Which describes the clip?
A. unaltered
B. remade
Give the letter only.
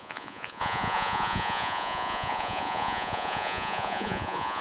B